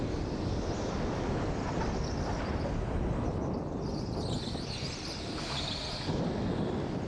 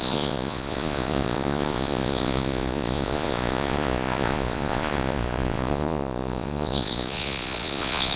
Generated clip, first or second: second